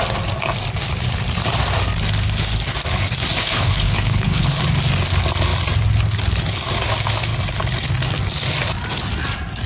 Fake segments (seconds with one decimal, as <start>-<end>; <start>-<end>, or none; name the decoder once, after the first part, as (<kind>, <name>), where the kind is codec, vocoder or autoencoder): 3.4-4.6 (codec, HILCodec)